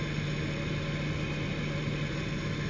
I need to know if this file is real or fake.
real